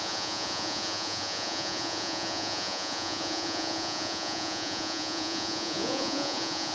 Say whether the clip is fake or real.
fake